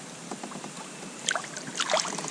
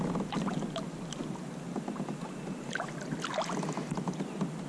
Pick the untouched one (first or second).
second